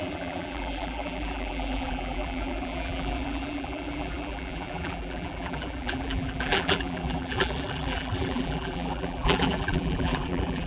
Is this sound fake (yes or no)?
yes